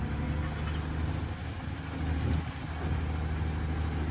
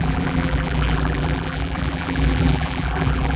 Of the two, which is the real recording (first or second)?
first